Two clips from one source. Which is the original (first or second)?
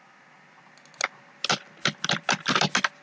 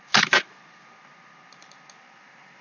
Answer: first